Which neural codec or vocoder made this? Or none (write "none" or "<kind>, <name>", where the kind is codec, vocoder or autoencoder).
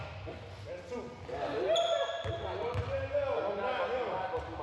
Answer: none